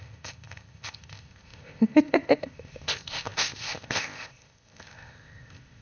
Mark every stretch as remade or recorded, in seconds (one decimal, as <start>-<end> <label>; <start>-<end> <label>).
0.0-5.8 remade